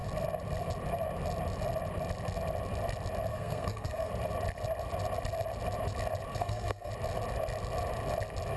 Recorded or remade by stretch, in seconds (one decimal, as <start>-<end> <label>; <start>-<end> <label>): 0.0-3.3 recorded; 3.3-4.1 remade; 4.1-6.3 recorded; 6.3-6.9 remade; 6.9-8.6 recorded